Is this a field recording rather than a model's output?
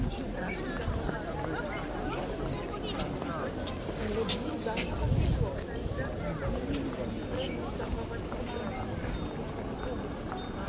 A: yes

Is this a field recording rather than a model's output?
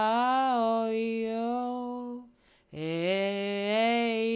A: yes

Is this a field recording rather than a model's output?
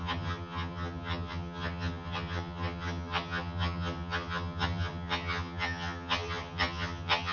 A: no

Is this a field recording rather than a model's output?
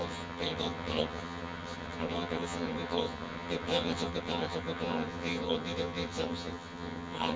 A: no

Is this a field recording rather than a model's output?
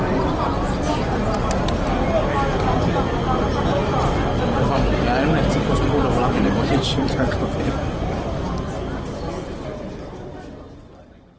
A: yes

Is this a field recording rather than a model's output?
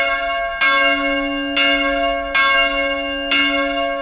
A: yes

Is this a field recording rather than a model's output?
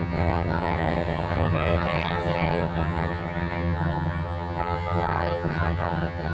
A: no